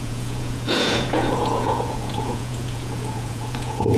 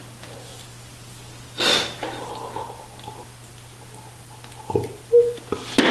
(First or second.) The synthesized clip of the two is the first